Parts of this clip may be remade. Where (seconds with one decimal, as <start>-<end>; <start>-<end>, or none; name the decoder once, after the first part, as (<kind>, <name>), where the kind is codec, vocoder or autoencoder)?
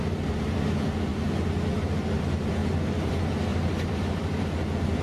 3.5-4.6 (vocoder, BigVGAN v2)